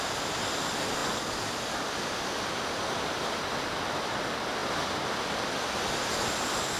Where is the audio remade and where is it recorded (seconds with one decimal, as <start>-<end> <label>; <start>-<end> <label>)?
0.0-4.6 recorded; 4.6-6.1 remade; 6.1-6.8 recorded